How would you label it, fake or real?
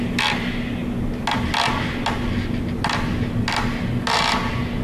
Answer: real